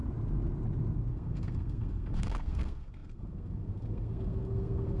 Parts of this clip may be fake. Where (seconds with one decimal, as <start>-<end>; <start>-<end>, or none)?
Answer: 1.1-5.0